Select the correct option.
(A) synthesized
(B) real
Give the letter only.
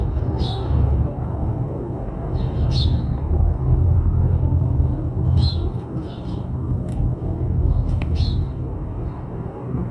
A